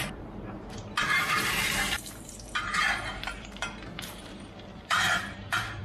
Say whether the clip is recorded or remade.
remade